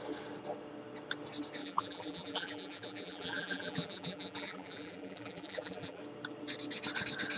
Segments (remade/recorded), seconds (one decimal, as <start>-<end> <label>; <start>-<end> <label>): 0.0-1.6 recorded; 1.6-6.0 remade; 6.0-7.4 recorded